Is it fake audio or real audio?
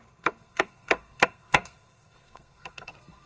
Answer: fake